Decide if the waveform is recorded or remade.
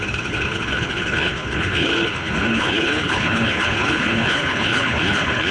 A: remade